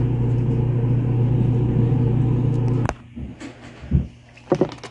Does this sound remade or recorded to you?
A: recorded